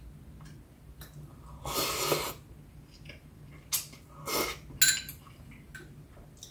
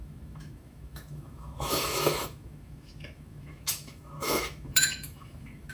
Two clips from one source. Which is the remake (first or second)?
second